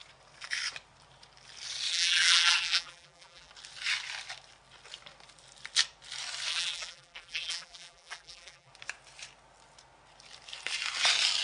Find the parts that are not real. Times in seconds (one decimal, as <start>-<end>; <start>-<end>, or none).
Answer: 1.9-3.5; 6.5-8.7